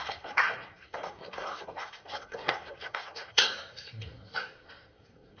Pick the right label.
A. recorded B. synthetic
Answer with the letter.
B